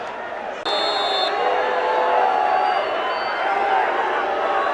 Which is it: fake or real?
real